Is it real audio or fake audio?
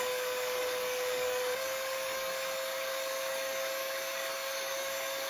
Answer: fake